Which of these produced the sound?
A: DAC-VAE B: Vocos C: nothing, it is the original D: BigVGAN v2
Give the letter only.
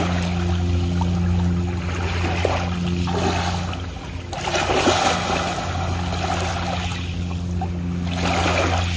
C